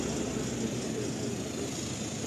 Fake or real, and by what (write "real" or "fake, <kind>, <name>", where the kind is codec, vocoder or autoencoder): real